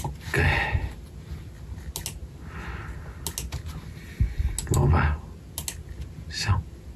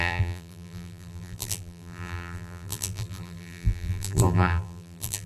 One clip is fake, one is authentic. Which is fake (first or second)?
second